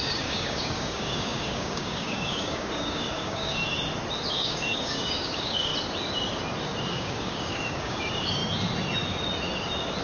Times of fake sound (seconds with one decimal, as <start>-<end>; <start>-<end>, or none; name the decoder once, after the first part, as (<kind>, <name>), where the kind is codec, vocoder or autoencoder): 0.0-3.6 (codec, DAC); 4.3-5.7; 6.9-8.4